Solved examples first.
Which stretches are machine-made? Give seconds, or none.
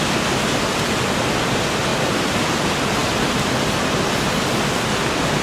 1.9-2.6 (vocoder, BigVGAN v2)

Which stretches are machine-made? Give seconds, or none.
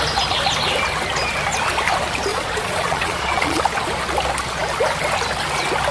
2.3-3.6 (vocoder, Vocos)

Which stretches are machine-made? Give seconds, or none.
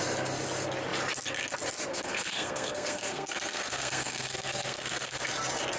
1.9-5.2 (codec, SNAC)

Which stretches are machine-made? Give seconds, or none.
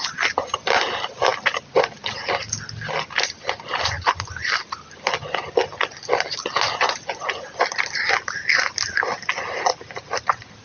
none